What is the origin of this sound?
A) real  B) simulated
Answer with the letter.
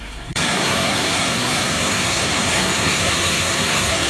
B